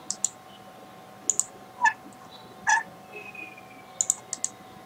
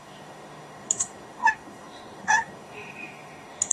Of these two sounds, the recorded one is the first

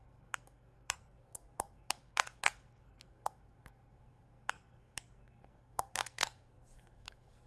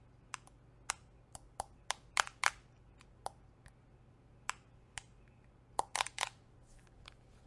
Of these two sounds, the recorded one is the second